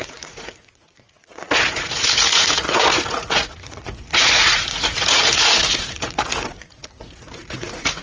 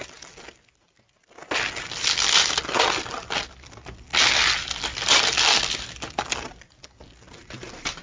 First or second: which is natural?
second